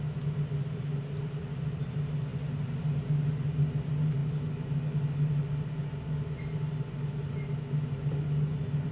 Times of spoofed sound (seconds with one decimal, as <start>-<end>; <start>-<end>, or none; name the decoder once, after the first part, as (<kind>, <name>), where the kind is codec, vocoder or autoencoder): none